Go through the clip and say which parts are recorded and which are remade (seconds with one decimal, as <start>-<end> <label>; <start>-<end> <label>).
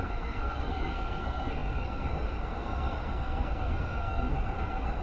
0.0-5.0 remade